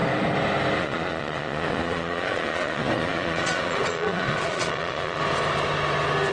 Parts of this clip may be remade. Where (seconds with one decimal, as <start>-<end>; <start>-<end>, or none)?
0.8-5.2